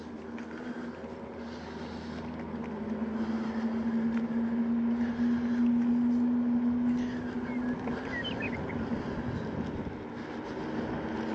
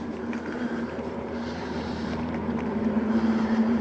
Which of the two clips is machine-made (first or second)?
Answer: second